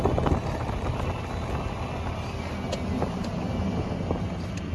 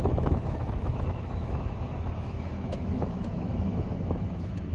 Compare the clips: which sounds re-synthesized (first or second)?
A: second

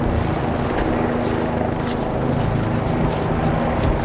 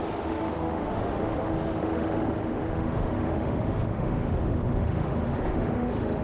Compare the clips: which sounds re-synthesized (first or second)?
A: second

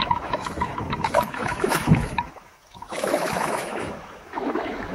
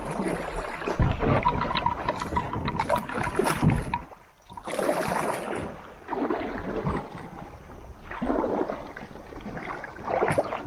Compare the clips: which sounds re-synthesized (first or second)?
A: first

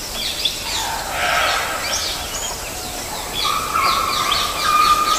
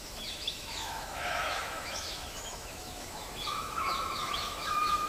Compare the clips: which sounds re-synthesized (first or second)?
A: second